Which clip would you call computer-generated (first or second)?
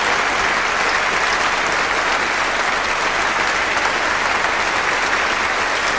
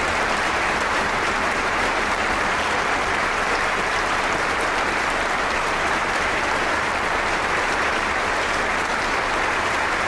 second